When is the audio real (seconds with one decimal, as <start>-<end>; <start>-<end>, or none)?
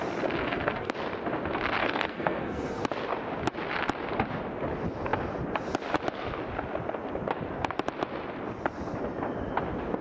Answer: 0.0-0.4; 0.9-1.8; 2.8-10.0